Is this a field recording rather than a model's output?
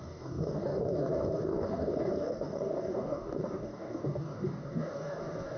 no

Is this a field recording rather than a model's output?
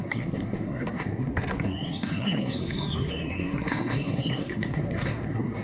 no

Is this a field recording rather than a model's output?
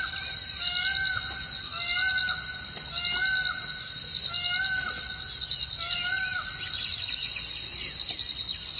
yes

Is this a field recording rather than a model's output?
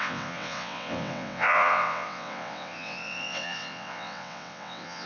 no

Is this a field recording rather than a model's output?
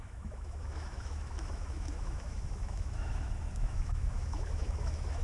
no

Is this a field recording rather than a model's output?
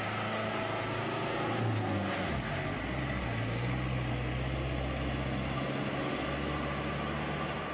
yes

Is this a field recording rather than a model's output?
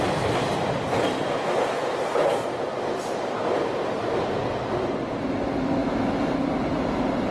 yes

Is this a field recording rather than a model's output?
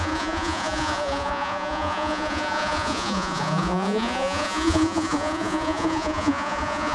no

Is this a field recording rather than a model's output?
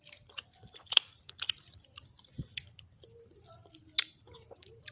no